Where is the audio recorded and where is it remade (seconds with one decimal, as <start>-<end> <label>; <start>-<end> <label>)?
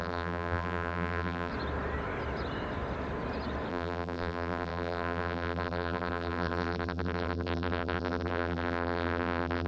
0.0-1.5 remade; 1.5-3.7 recorded; 3.7-9.7 remade